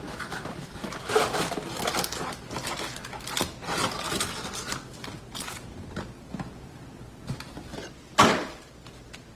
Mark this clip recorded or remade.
recorded